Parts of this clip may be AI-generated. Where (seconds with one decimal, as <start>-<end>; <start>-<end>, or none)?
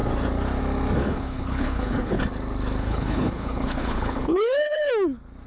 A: 1.0-2.2; 2.8-4.9